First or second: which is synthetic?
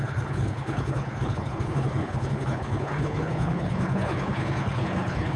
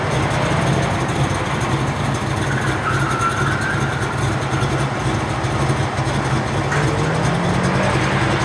first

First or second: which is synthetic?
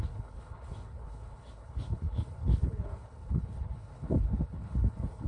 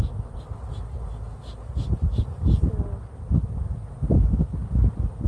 first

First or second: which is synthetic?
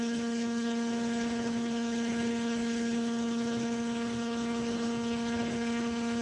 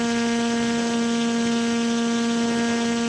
first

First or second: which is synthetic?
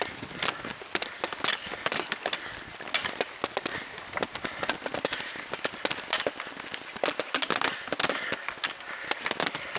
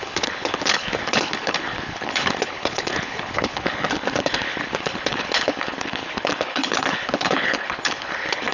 second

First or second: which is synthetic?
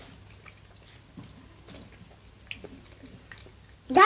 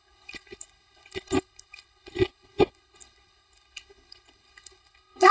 second